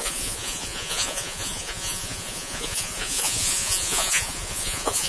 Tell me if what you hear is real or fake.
fake